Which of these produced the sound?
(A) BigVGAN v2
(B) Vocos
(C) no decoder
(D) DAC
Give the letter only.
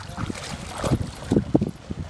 C